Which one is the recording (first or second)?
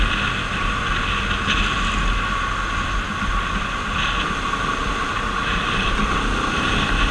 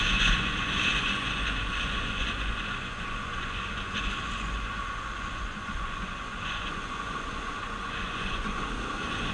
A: first